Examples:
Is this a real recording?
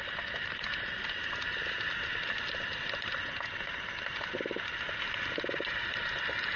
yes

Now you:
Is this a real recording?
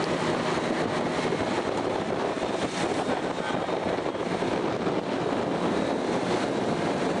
yes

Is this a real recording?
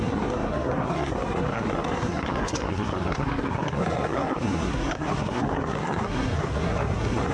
no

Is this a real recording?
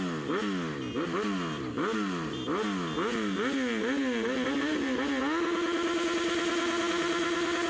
yes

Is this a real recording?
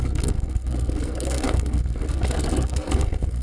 no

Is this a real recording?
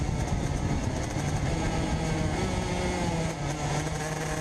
yes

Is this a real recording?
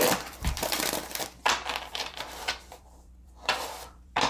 no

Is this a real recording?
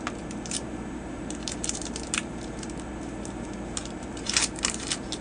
no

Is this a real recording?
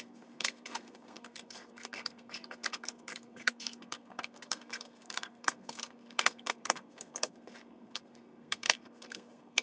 no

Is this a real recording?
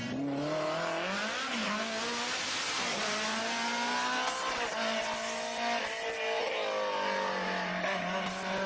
yes